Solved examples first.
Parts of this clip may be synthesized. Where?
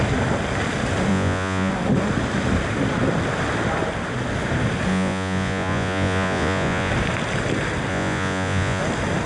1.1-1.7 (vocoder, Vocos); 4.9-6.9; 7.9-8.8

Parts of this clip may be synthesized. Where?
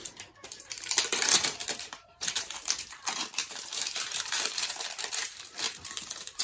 0.0-6.4 (vocoder, BigVGAN v2)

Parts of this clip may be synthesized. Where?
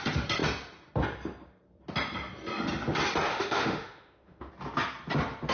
3.3-4.5 (autoencoder, DAC-VAE)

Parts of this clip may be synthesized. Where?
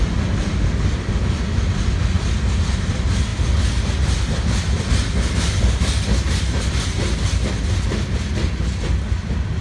none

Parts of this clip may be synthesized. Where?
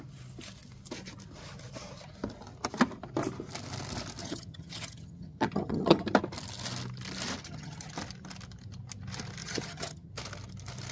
4.2-6.0 (vocoder, HiFi-GAN); 7.4-7.9; 9.4-10.1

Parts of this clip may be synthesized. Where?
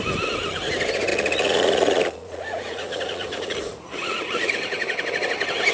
1.1-4.5 (vocoder, Vocos)